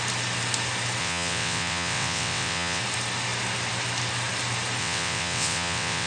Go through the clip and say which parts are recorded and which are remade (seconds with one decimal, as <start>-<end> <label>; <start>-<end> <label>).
0.0-1.0 recorded; 1.0-2.8 remade; 2.8-4.8 recorded; 4.8-6.1 remade